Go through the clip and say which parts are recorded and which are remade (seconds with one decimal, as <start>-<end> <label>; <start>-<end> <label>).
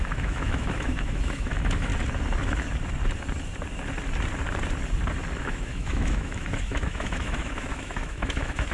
0.0-1.9 remade; 1.9-5.4 recorded; 5.4-8.7 remade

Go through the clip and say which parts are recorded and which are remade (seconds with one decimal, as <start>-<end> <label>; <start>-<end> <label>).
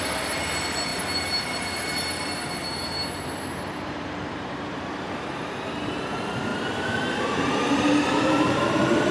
0.0-9.1 remade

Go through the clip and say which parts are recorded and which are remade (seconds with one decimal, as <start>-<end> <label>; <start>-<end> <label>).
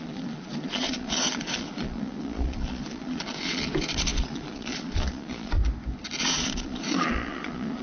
0.0-5.6 remade; 5.6-6.2 recorded; 6.2-7.8 remade